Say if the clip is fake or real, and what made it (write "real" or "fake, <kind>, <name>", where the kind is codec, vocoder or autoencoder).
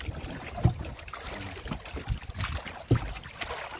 real